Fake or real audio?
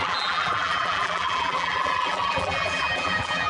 fake